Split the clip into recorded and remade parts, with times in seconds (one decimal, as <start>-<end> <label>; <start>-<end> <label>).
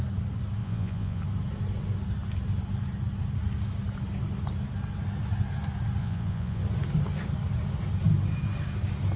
0.0-0.6 recorded; 0.6-1.2 remade; 1.2-6.0 recorded; 6.0-6.6 remade; 6.6-9.2 recorded